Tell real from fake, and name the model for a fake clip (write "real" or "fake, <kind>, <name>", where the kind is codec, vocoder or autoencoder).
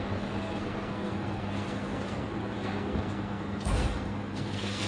fake, codec, SNAC